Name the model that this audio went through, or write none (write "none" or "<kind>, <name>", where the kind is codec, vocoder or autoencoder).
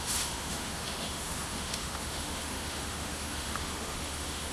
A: autoencoder, DAC-VAE